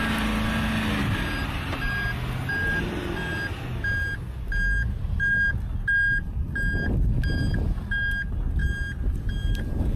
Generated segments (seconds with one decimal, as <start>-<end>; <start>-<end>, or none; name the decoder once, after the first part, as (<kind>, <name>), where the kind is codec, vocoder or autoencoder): none